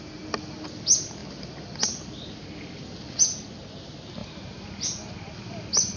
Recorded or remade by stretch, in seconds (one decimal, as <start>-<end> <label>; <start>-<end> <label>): 0.0-6.0 recorded